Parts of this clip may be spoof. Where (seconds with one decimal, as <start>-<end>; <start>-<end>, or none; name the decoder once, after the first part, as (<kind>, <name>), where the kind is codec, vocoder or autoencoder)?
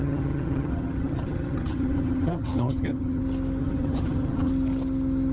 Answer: 0.0-3.2 (vocoder, HiFi-GAN); 3.6-4.5